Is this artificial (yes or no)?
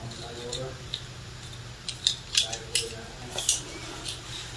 no